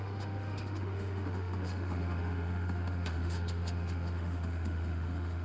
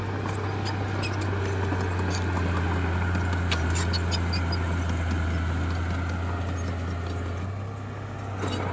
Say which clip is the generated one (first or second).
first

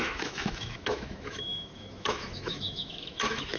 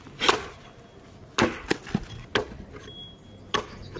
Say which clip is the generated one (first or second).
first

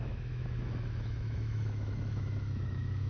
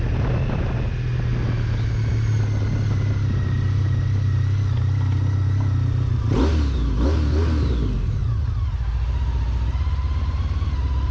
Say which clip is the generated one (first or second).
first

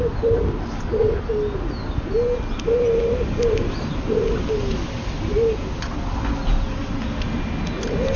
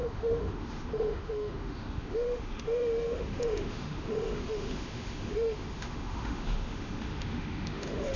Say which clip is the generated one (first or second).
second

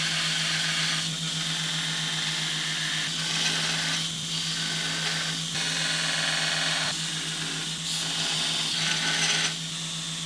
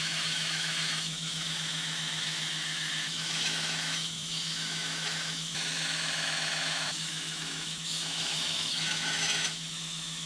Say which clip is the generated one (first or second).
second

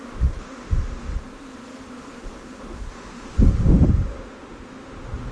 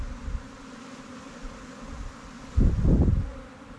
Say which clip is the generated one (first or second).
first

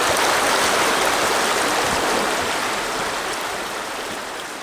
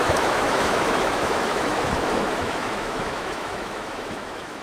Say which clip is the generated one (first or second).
second